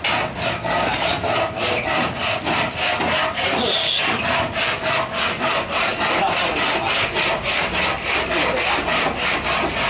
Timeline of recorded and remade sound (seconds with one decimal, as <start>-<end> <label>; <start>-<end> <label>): 0.0-9.9 recorded